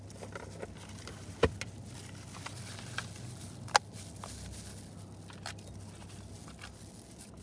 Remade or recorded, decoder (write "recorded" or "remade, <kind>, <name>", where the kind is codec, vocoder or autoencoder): recorded